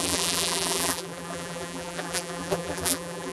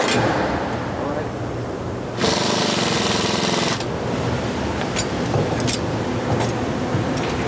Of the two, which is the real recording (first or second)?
second